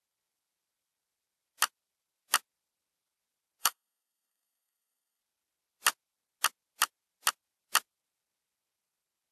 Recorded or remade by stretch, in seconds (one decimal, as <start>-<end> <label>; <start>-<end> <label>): 0.0-3.6 recorded; 3.6-5.2 remade; 5.2-9.3 recorded